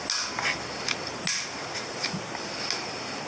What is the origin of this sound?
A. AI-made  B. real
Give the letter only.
B